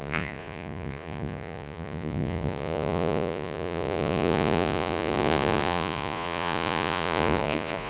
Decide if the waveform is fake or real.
fake